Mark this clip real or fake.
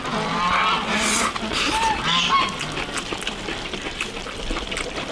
real